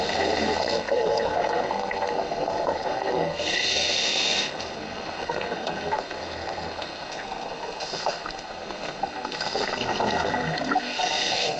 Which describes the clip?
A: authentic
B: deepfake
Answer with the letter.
B